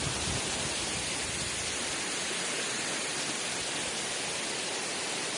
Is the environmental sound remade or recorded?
recorded